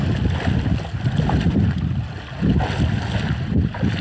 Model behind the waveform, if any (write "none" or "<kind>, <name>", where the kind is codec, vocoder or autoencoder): none